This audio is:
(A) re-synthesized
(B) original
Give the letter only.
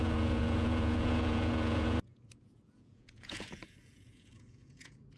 A